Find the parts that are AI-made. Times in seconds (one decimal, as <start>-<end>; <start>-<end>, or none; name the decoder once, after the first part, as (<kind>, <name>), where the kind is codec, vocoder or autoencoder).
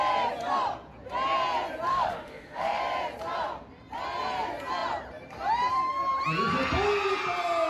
1.9-2.8 (autoencoder, DAC-VAE)